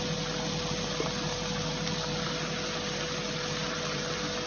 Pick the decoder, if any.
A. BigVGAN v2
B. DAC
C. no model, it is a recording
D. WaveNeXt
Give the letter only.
C